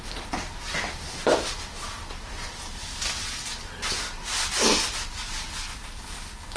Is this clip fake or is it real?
real